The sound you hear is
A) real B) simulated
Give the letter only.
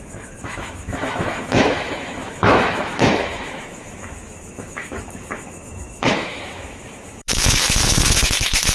B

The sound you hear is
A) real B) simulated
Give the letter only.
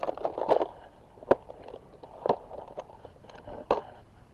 A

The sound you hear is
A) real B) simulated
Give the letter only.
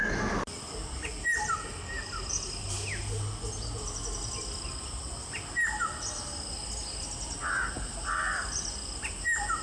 A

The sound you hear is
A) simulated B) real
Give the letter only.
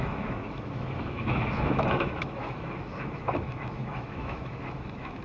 A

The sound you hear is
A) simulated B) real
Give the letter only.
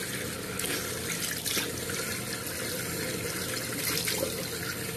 B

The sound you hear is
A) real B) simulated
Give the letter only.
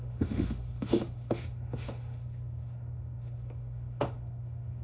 B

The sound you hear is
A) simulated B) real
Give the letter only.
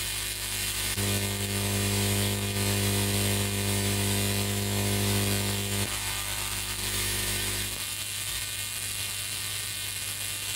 A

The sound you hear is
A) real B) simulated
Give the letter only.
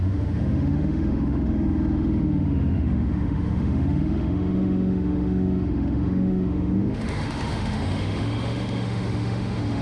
B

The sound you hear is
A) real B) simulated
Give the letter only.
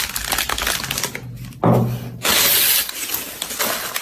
A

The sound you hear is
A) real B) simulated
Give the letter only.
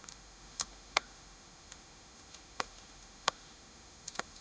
B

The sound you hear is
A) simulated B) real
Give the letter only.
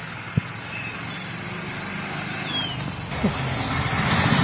B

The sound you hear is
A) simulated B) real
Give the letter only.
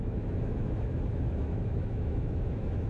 A